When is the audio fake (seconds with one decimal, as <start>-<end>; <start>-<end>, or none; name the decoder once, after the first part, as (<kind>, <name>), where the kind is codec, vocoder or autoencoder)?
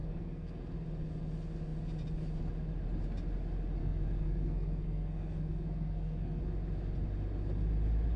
0.0-0.6 (codec, SNAC); 3.8-6.4